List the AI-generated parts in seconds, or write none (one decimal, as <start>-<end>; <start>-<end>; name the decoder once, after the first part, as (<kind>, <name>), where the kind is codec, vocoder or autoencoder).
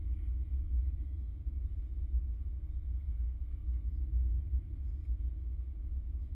2.5-4.0 (codec, SNAC)